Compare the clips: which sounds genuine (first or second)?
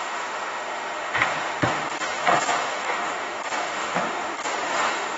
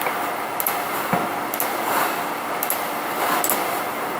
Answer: second